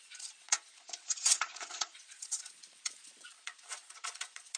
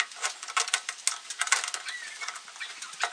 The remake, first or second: first